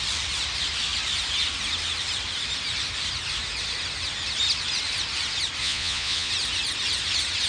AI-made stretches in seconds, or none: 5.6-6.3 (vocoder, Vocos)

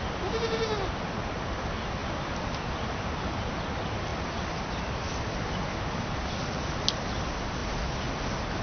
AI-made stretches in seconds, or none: none

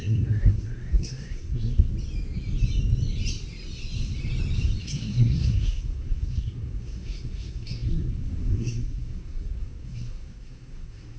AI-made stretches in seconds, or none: 0.0-1.9 (codec, SNAC); 4.8-11.2

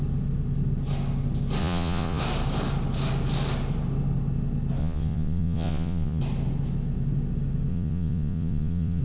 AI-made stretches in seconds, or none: 1.6-2.2 (vocoder, Vocos); 4.8-6.2; 7.7-9.0

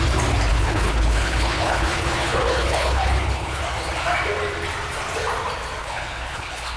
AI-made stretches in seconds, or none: 0.5-3.6 (codec, HILCodec); 5.8-6.8

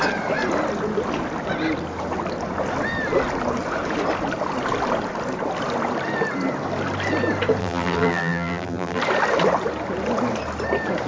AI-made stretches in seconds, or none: 7.6-9.0 (vocoder, BigVGAN v2)